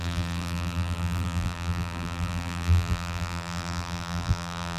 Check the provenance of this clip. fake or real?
fake